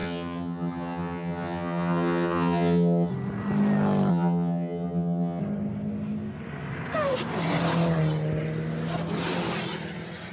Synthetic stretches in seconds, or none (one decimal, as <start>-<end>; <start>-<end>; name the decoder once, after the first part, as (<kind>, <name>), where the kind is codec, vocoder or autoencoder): 0.0-3.1 (vocoder, HiFi-GAN); 4.1-5.4